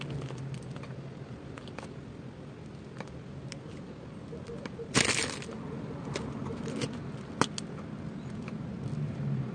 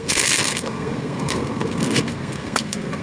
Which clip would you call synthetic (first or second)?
second